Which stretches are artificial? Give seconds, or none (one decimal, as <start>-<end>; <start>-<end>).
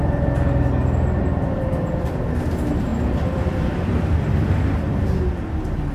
2.9-5.2